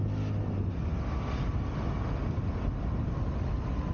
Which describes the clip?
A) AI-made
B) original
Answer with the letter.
B